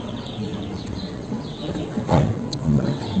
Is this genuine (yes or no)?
no